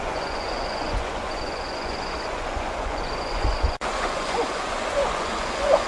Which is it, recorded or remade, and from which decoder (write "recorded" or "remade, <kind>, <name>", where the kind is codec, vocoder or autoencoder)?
remade, vocoder, Vocos